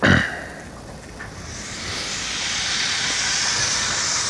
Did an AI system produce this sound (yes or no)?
no